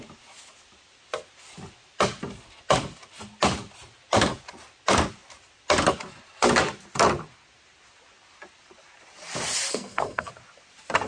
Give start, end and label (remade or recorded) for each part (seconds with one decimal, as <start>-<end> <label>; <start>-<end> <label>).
0.0-9.7 recorded; 9.7-10.3 remade; 10.3-11.1 recorded